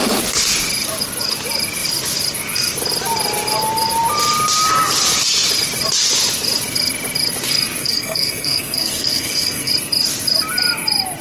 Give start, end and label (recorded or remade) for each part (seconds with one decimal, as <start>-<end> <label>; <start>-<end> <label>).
0.0-7.8 recorded; 7.8-9.7 remade; 9.7-11.2 recorded